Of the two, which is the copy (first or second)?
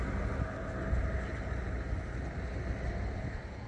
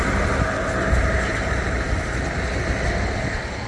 second